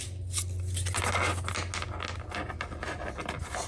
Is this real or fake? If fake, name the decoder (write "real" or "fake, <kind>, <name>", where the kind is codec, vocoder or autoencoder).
real